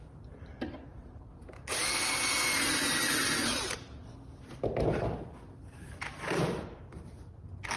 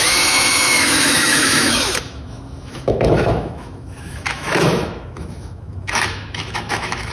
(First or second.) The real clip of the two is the first